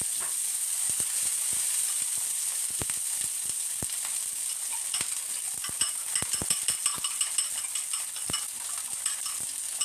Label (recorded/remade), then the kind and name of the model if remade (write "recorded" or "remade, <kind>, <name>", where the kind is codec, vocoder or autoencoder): recorded